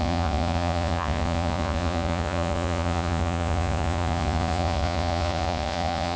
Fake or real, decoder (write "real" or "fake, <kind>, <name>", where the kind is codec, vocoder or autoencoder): fake, vocoder, Vocos